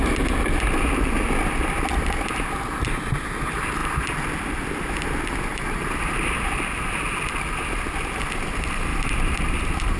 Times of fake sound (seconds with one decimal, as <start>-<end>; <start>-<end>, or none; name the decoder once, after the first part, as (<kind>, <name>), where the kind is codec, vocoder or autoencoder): 5.5-6.5 (vocoder, BigVGAN v2); 8.9-10.0